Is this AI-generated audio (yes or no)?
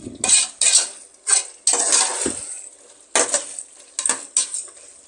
no